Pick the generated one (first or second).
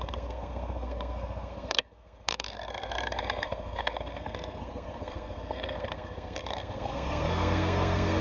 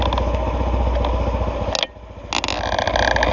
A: first